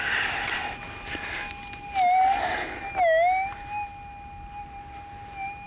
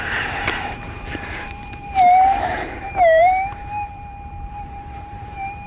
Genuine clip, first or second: first